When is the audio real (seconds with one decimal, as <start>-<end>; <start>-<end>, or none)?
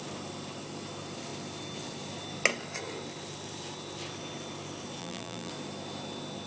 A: 0.0-5.0; 5.5-6.5